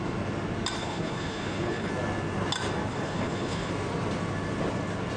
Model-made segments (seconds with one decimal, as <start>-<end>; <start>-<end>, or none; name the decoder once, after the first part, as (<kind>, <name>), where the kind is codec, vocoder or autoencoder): 0.8-1.9 (codec, HILCodec); 2.9-3.7

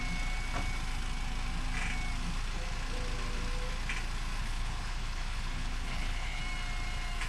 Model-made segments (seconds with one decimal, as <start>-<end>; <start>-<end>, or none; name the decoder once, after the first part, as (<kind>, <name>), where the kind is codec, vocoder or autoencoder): 4.4-6.4 (codec, HILCodec)

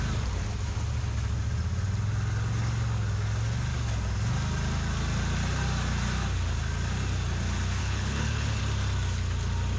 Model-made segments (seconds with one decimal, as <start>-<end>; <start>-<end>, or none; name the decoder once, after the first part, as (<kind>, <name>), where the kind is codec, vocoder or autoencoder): 7.8-8.6 (codec, HILCodec)

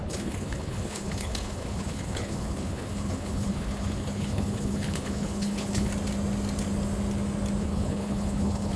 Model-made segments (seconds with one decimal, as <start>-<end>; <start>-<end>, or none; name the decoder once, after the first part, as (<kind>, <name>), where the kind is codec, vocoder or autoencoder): 0.0-5.9 (codec, HILCodec); 7.6-8.8

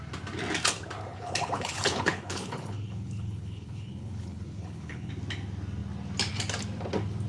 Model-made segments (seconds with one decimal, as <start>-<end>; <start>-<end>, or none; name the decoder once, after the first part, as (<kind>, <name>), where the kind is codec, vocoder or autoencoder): 1.1-5.1 (codec, HILCodec)

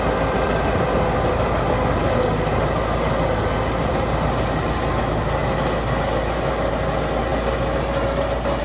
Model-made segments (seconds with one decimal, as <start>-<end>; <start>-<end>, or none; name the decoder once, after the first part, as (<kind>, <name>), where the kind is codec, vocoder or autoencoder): none

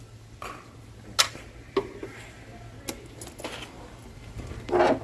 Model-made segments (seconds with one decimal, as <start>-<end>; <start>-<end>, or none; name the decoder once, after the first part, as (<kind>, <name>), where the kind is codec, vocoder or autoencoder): none

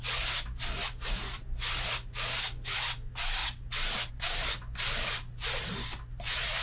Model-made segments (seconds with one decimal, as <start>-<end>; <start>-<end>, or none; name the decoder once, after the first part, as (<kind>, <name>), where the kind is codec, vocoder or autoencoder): none